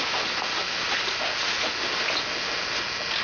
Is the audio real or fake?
real